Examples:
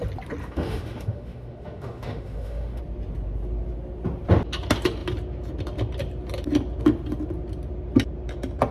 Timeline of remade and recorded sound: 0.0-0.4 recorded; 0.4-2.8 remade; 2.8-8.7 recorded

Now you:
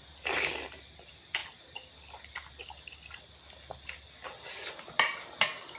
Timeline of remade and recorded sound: 0.0-5.8 recorded

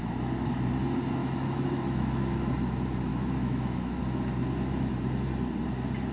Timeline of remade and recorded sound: 0.0-1.2 recorded; 1.2-2.5 remade; 2.5-3.1 recorded; 3.1-4.0 remade; 4.0-6.1 recorded